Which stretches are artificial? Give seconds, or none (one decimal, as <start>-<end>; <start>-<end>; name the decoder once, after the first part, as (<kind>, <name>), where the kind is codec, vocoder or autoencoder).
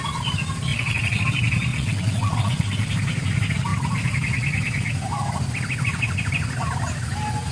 0.7-1.2 (vocoder, WaveNeXt); 1.7-2.9